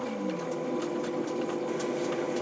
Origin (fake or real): real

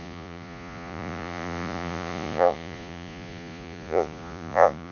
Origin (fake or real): fake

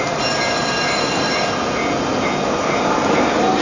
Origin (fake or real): real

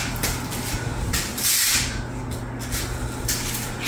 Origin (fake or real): real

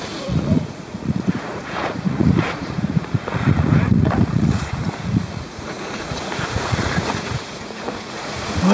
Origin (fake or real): fake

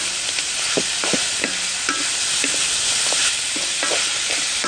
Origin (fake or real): real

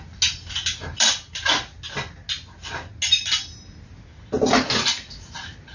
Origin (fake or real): real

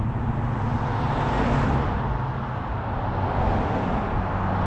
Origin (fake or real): real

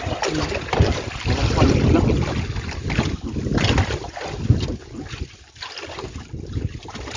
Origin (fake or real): real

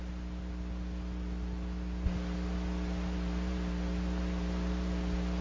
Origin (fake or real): real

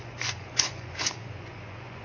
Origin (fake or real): fake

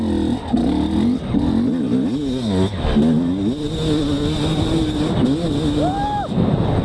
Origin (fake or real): real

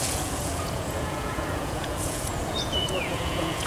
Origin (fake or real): fake